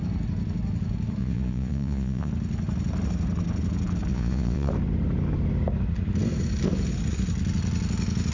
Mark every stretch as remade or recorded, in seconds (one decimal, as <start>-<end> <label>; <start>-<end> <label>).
0.0-1.2 recorded; 1.2-2.3 remade; 2.3-4.1 recorded; 4.1-4.7 remade; 4.7-8.3 recorded